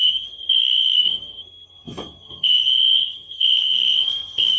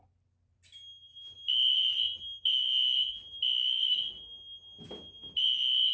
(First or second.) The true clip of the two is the second